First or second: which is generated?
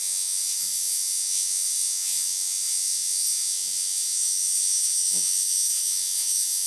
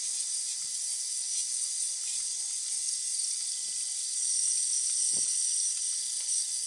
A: first